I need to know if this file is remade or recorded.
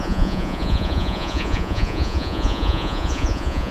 remade